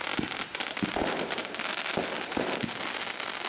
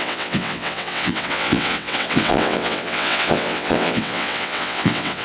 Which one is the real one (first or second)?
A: first